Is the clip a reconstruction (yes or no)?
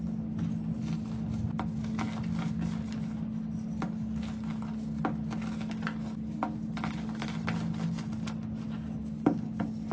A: no